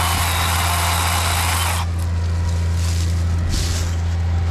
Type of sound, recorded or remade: recorded